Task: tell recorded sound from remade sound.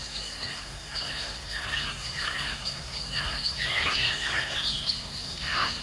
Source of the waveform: remade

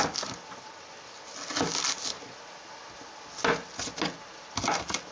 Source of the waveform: recorded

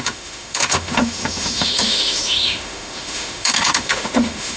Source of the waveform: remade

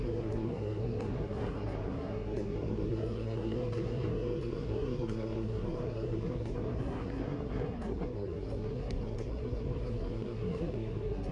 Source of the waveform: remade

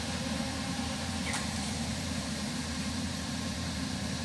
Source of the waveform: remade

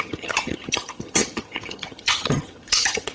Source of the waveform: remade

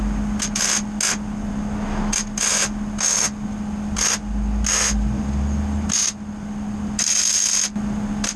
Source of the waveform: recorded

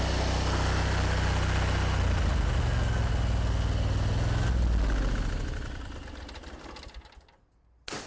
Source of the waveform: recorded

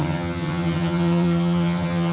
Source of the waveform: remade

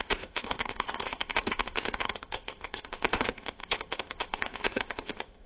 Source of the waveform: remade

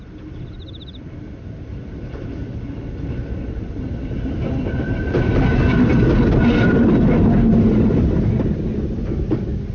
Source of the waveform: recorded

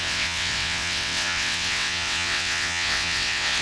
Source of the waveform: remade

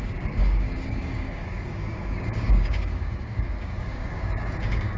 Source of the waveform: remade